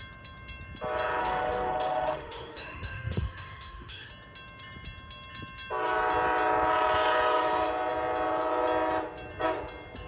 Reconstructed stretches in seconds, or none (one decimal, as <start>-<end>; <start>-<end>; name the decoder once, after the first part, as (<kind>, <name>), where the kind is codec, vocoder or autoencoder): 1.2-4.1 (autoencoder, DAC-VAE)